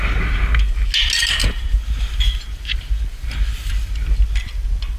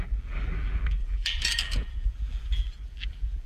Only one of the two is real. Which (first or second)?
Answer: first